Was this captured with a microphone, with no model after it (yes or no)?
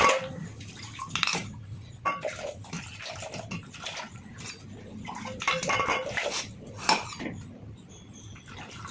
yes